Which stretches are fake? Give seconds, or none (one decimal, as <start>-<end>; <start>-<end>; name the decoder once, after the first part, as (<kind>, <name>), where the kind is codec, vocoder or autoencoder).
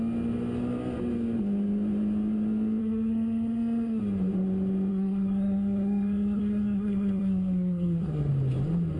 2.8-4.0 (codec, SNAC); 4.9-8.3